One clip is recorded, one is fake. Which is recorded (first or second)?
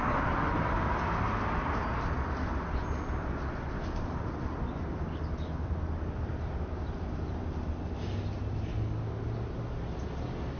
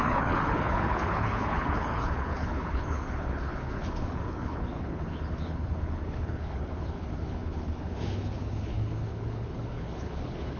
first